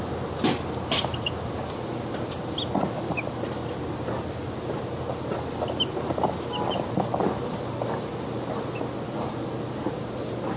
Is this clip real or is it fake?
real